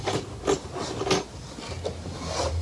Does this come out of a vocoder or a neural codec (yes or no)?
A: no